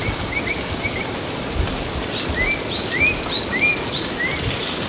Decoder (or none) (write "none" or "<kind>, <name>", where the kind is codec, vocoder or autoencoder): none